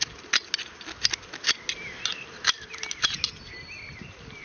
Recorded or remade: recorded